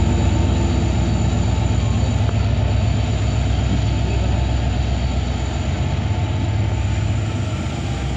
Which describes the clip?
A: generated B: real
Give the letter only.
B